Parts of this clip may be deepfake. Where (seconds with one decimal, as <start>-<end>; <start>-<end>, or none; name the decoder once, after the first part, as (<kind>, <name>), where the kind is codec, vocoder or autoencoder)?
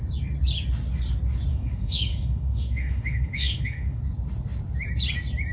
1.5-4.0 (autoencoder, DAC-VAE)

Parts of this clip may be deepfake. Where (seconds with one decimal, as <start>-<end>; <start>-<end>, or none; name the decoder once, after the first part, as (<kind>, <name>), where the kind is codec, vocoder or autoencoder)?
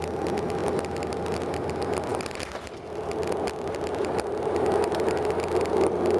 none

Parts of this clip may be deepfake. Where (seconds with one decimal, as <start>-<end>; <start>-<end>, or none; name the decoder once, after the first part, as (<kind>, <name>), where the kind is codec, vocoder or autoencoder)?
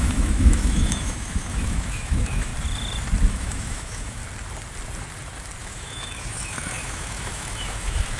0.0-2.5 (autoencoder, DAC-VAE); 3.3-4.2; 5.6-8.2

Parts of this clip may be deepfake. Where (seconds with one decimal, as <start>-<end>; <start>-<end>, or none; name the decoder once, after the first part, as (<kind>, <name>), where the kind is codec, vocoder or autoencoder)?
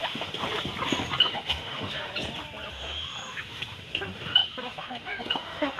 0.0-0.4 (autoencoder, DAC-VAE); 1.2-2.1; 2.7-5.8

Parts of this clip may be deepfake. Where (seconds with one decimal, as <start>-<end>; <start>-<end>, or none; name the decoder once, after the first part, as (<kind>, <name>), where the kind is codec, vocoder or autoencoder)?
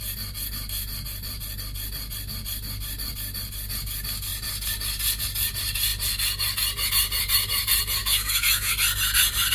8.0-8.7 (autoencoder, DAC-VAE)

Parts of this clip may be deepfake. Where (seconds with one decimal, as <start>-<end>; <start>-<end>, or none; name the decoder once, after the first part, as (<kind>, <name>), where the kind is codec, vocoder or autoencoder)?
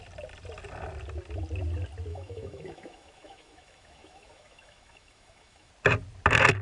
2.1-5.7 (autoencoder, DAC-VAE)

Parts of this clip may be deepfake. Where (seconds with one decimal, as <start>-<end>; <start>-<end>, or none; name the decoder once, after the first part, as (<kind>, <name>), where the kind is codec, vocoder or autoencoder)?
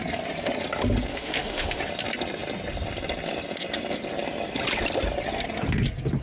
1.1-1.8 (autoencoder, DAC-VAE)